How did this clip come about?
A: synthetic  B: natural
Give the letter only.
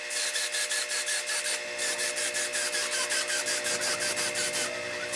B